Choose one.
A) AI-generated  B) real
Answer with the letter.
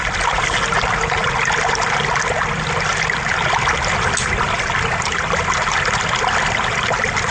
B